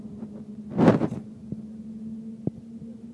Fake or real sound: real